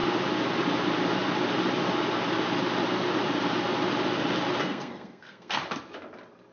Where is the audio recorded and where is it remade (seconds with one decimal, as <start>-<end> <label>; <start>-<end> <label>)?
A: 0.0-4.6 recorded; 4.6-5.6 remade; 5.6-6.5 recorded